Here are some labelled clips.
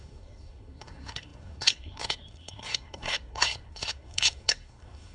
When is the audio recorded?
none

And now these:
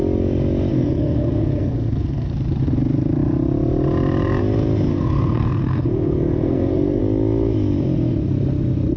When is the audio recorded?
0.0-0.7; 2.3-4.9; 7.0-9.0

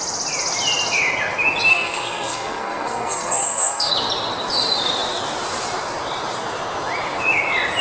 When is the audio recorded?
0.0-1.7; 3.9-7.8

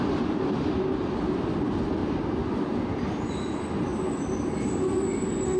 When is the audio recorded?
0.0-5.6